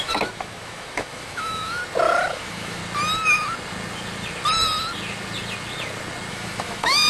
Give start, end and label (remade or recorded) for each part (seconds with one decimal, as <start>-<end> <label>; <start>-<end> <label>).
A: 0.0-1.8 remade; 1.8-2.3 recorded; 2.3-2.8 remade; 2.8-6.3 recorded; 6.3-7.1 remade